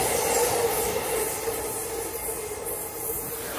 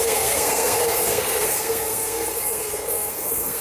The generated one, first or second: second